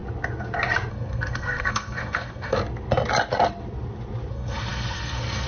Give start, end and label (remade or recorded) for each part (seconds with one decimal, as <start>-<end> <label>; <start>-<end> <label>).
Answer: 0.0-0.9 recorded; 0.9-2.6 remade; 2.6-4.3 recorded; 4.3-5.5 remade